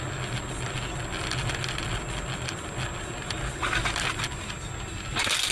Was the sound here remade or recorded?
recorded